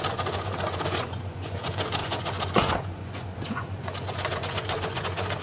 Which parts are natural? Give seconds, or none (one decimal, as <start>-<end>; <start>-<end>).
none